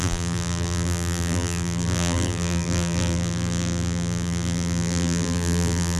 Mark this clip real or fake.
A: fake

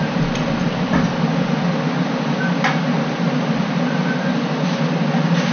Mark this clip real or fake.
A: real